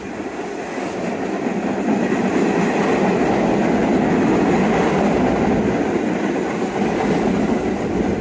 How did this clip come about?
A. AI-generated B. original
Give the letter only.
B